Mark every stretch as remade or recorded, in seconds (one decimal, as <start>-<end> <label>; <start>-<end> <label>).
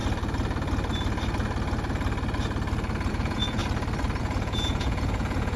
0.0-3.1 recorded; 3.1-3.6 remade; 3.6-4.2 recorded; 4.2-5.6 remade